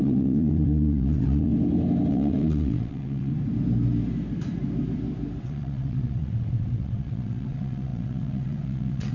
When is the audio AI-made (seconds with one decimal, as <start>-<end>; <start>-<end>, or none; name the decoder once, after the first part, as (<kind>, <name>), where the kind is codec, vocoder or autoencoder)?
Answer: 0.0-1.5 (vocoder, WaveNeXt); 2.1-3.3; 5.4-9.1